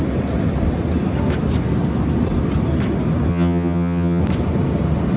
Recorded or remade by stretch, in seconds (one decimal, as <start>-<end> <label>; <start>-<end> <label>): 0.0-3.3 recorded; 3.3-4.2 remade; 4.2-5.2 recorded